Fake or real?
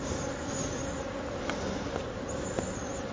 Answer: real